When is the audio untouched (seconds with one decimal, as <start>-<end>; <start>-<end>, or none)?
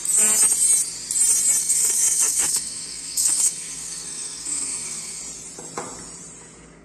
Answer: 0.0-1.6; 5.2-6.8